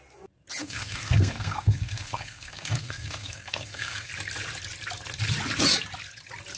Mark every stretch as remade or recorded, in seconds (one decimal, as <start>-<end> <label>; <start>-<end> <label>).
0.0-0.6 recorded; 0.6-4.1 remade; 4.1-6.6 recorded

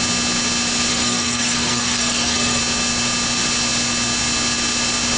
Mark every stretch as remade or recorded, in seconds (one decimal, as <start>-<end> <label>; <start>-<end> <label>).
0.0-0.9 recorded; 0.9-2.6 remade; 2.6-5.2 recorded

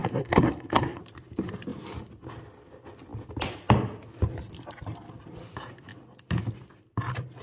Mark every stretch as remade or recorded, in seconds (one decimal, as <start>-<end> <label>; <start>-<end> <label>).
0.0-1.0 remade; 1.0-7.4 recorded

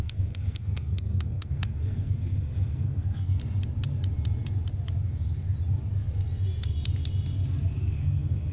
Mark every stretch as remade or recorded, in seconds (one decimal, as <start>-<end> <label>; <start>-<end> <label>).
0.0-3.4 remade; 3.4-7.8 recorded; 7.8-8.5 remade

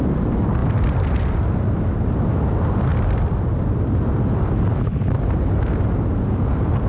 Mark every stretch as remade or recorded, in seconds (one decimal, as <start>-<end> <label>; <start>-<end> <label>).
0.0-6.9 recorded

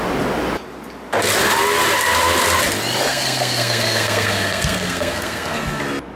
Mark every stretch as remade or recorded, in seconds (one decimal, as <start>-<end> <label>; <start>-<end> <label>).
0.0-3.1 recorded; 3.1-5.8 remade; 5.8-6.2 recorded